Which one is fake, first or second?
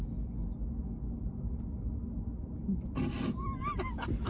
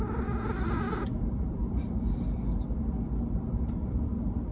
second